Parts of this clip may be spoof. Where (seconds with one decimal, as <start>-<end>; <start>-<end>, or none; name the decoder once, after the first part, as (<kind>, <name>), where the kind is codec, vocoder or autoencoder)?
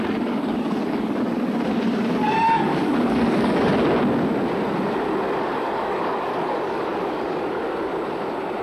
0.0-3.7 (codec, DAC); 5.4-7.9